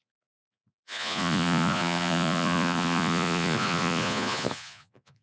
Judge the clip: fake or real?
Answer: fake